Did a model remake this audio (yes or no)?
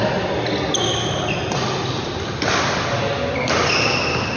no